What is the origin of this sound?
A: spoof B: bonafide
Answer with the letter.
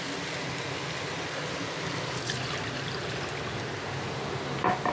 B